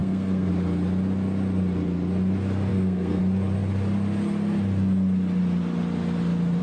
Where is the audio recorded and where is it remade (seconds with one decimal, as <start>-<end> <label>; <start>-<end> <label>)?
0.0-0.5 remade; 0.5-2.7 recorded; 2.7-3.2 remade; 3.2-6.6 recorded